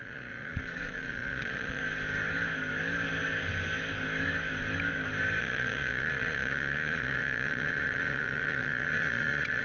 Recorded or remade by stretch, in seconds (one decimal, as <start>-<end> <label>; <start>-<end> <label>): 0.0-1.8 remade; 1.8-5.4 recorded; 5.4-9.6 remade